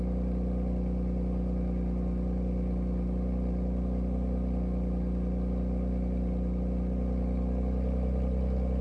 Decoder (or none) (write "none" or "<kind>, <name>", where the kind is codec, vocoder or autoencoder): none